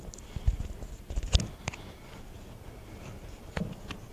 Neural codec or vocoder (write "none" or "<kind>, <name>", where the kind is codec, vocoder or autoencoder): none